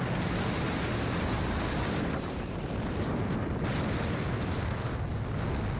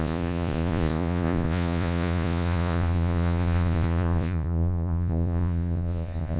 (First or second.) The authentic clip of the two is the first